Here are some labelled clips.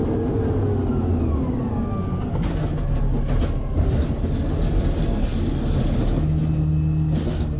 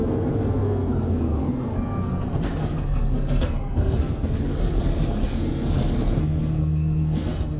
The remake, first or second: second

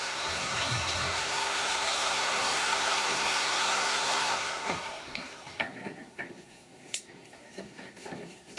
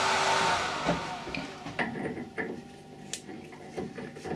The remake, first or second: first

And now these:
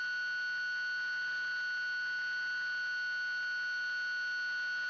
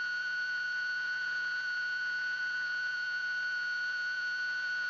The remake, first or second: second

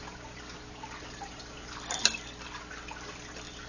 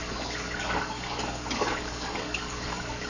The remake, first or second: second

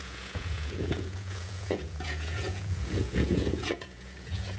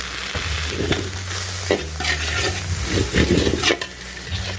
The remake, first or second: first